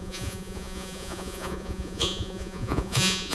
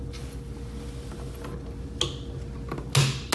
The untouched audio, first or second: second